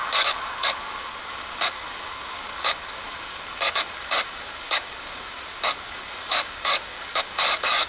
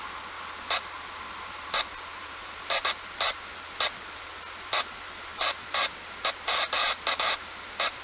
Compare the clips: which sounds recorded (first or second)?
second